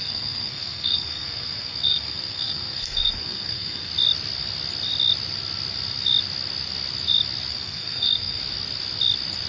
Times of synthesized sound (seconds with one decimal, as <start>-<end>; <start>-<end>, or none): 0.0-3.9; 7.5-8.4